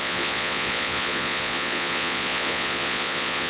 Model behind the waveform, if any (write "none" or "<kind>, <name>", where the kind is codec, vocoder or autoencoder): vocoder, Vocos